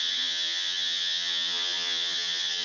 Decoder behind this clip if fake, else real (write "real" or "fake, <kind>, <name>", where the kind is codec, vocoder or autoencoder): fake, vocoder, HiFi-GAN